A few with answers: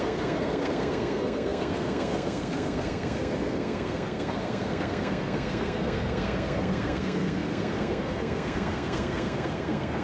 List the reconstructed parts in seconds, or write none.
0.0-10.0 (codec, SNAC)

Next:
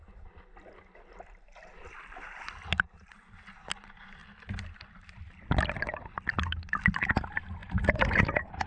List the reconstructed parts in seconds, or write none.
none